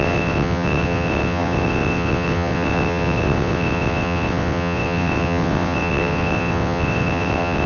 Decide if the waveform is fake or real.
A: fake